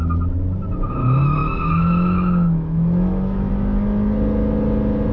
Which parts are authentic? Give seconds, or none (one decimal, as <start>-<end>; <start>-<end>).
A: 0.0-1.4; 3.5-5.1